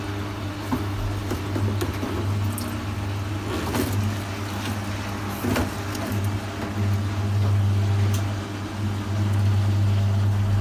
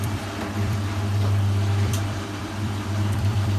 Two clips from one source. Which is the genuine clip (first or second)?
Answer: first